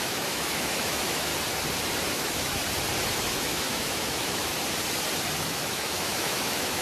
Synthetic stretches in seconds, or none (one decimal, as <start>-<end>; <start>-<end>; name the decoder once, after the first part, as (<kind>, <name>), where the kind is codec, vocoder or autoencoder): 0.0-1.3 (autoencoder, DAC-VAE); 2.1-2.6; 3.1-4.5; 5.4-6.8

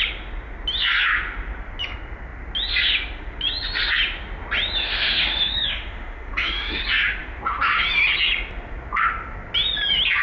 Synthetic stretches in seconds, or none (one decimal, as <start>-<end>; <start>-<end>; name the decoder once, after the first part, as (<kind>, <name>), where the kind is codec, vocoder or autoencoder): 4.8-6.8 (autoencoder, DAC-VAE)

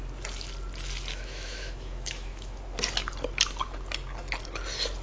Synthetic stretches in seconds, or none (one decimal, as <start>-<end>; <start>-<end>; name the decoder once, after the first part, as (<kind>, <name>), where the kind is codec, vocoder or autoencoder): 1.1-2.6 (autoencoder, DAC-VAE)

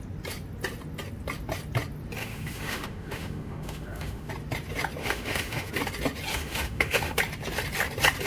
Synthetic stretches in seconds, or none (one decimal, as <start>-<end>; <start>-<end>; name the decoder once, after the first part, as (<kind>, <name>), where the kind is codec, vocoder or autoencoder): 2.2-4.3 (autoencoder, DAC-VAE); 5.0-5.7; 6.3-7.2

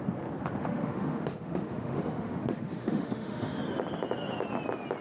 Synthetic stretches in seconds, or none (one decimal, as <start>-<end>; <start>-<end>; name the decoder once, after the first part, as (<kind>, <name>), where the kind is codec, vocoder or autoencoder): 0.6-3.6 (autoencoder, DAC-VAE)